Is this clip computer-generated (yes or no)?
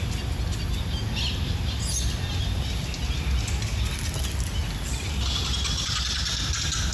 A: no